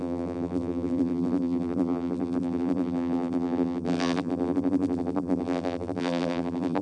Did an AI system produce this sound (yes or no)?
yes